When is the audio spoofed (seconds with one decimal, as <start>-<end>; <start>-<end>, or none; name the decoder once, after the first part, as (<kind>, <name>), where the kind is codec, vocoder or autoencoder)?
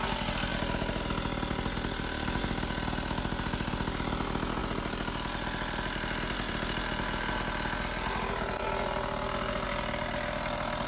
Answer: none